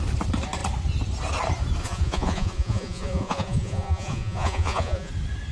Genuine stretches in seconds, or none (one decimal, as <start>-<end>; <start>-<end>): 0.0-1.8; 5.1-5.5